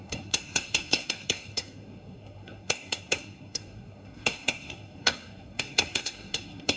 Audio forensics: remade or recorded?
remade